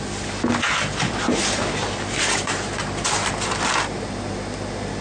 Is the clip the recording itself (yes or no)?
yes